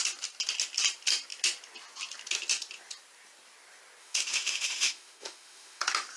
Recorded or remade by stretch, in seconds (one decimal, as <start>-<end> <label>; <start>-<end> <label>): 0.0-4.0 recorded; 4.0-5.8 remade; 5.8-6.2 recorded